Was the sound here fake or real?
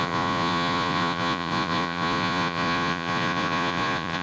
fake